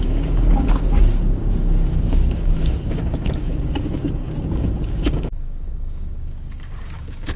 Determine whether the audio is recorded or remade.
remade